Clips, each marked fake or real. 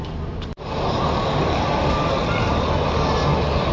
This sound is real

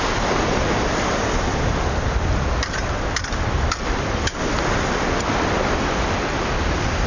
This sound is real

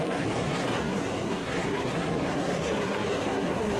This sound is fake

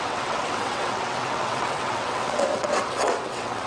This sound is fake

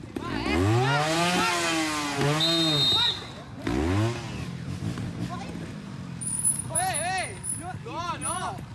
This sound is real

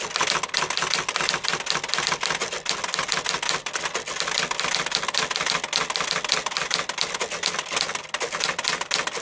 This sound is real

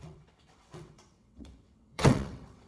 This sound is fake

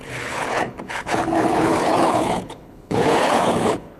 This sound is fake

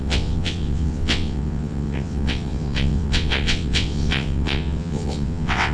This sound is fake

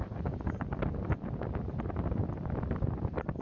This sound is real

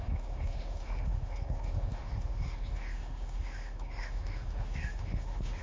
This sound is fake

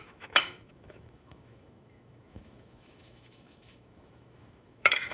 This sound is fake